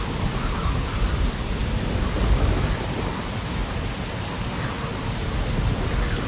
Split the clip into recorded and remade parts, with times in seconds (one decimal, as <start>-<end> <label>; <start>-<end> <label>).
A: 0.0-6.3 recorded